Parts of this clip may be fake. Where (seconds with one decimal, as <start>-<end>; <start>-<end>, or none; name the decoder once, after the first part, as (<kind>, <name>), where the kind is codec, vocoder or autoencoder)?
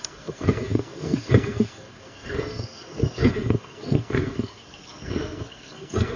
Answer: 0.0-6.2 (codec, SNAC)